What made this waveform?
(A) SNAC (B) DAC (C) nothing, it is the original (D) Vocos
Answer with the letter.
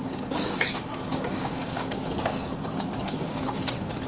B